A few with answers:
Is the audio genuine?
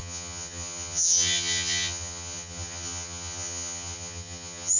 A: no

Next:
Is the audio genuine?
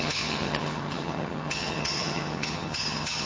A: no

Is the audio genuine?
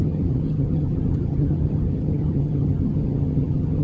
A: no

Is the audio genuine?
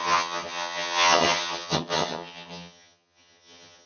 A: no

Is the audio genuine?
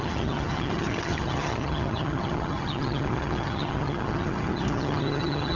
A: no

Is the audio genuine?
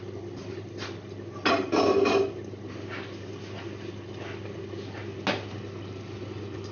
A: yes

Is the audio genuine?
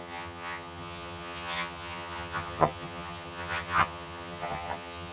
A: no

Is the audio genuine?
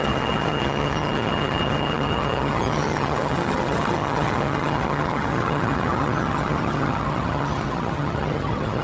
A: no